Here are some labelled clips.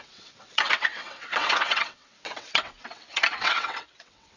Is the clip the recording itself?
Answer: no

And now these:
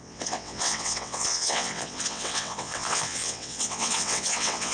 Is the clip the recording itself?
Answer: no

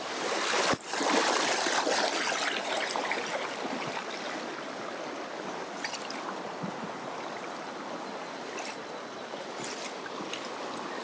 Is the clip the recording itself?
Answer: yes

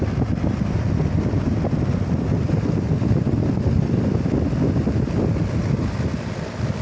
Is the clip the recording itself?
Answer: yes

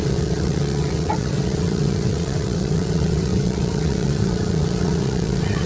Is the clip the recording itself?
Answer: no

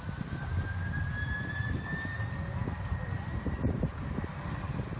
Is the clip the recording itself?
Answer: yes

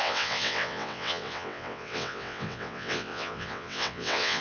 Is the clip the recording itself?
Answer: no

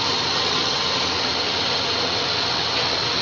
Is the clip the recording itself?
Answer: no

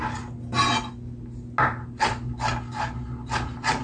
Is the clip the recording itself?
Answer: yes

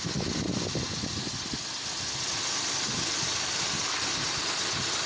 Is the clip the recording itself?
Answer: yes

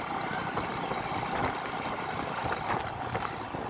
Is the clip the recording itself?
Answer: yes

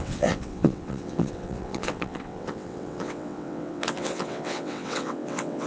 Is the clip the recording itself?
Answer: no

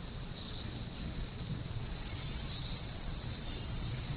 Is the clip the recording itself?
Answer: no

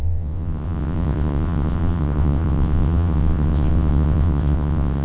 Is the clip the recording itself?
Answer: no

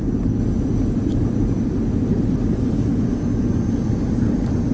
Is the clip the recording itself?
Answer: yes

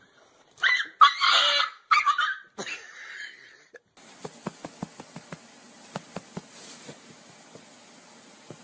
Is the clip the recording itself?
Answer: yes